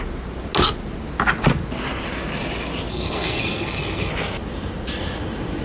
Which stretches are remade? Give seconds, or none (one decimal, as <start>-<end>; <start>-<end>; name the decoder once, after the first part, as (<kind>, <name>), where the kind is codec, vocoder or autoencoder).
2.9-4.1 (codec, SNAC)